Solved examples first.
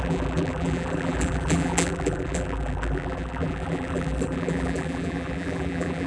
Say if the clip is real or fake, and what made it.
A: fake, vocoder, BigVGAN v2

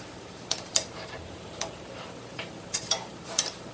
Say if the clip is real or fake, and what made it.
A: fake, vocoder, BigVGAN v2